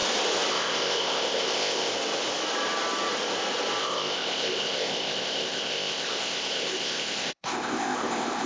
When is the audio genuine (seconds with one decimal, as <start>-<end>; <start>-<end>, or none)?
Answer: 0.0-0.5; 1.9-3.8